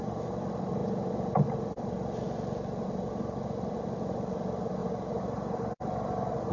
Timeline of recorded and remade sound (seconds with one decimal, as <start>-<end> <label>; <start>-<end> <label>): 0.0-6.5 recorded